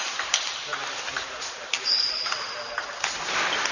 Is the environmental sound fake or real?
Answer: real